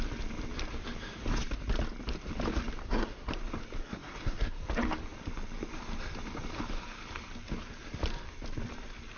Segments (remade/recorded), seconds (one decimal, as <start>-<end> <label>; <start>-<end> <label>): 0.0-2.8 recorded; 2.8-3.3 remade; 3.3-3.8 recorded; 3.8-4.6 remade; 4.6-9.2 recorded

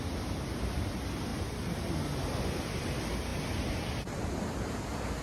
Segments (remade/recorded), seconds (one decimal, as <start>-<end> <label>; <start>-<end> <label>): 0.0-5.2 recorded

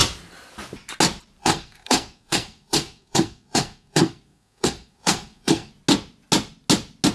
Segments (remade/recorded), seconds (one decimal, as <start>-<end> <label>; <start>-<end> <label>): 0.0-1.4 recorded; 1.4-5.7 remade; 5.7-7.1 recorded